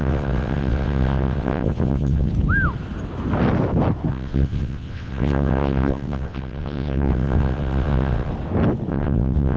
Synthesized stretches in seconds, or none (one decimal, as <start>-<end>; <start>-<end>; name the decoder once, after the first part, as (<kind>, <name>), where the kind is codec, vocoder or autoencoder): 0.0-2.3 (vocoder, WaveNeXt); 4.1-8.3; 8.9-9.6